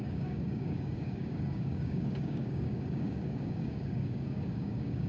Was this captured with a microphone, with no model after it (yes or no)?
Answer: no